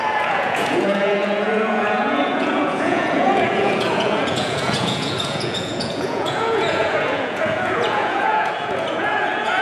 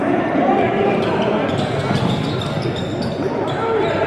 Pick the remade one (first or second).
first